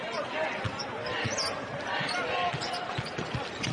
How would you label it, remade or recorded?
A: recorded